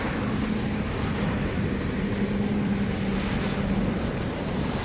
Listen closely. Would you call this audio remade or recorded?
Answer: recorded